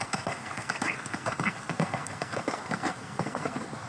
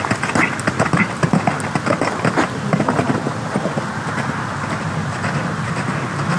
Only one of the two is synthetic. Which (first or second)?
first